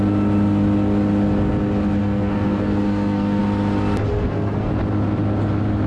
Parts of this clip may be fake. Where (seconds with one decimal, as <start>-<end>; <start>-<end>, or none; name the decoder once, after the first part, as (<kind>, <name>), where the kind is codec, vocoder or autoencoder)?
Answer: 2.0-3.4 (codec, SNAC); 4.1-4.7